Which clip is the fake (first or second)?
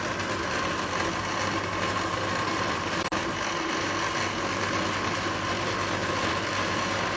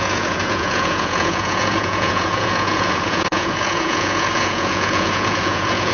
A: second